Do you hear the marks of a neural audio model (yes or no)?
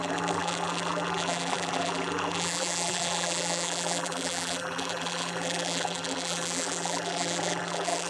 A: yes